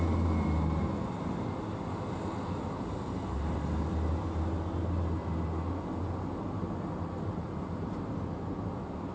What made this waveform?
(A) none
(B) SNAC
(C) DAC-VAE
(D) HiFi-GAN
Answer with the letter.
A